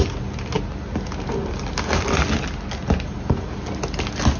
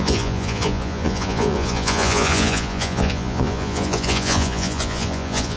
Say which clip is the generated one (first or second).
second